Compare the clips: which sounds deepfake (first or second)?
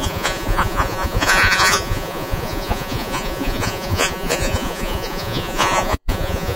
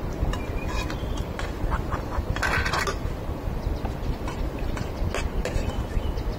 first